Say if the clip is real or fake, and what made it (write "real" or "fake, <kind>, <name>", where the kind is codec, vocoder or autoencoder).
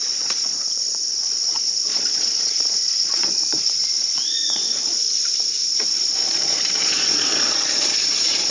fake, vocoder, Vocos